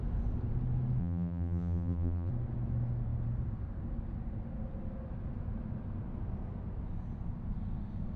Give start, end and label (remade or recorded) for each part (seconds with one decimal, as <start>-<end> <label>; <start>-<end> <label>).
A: 0.0-1.0 recorded; 1.0-2.3 remade; 2.3-8.2 recorded